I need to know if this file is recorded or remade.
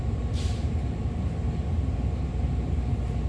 remade